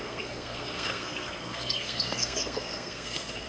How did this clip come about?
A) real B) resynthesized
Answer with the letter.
B